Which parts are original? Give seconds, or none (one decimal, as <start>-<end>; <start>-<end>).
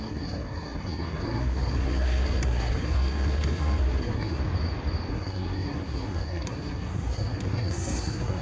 4.4-5.1